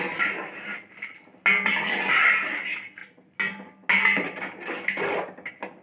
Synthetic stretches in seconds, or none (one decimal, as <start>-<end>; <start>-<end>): none